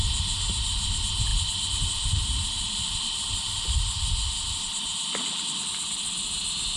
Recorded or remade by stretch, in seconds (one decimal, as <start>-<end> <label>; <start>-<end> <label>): 0.0-6.8 recorded